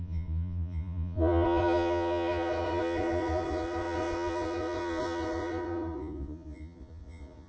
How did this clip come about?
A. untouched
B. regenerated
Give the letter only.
B